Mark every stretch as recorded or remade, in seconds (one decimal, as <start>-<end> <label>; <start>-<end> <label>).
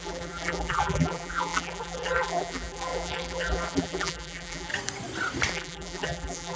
0.0-4.7 remade; 4.7-5.5 recorded; 5.5-6.6 remade